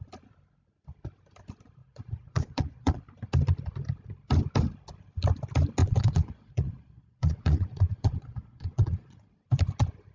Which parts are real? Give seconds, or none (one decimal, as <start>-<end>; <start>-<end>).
0.0-1.8; 3.0-5.8; 9.3-10.1